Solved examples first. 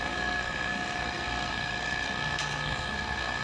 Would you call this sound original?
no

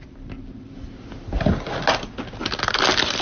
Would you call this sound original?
yes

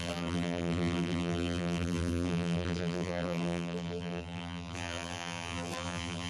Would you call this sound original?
no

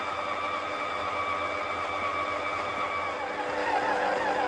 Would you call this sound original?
yes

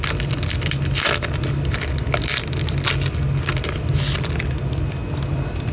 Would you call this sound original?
yes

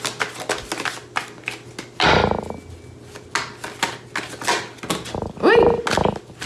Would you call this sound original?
yes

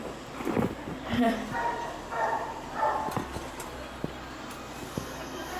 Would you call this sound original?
no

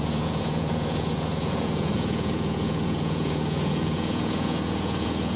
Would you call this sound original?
no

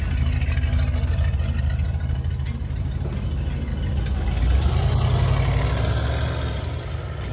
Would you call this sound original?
yes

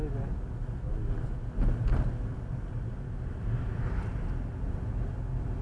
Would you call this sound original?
yes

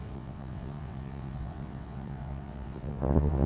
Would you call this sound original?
no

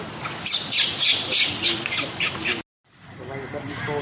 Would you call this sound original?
yes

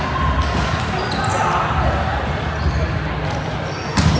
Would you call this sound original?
yes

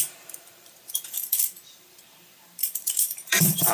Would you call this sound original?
no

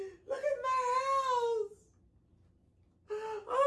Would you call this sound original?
yes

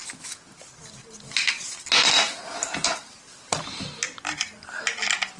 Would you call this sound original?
yes